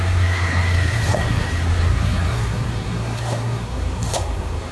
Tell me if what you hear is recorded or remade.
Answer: remade